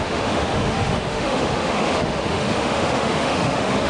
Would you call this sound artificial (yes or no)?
yes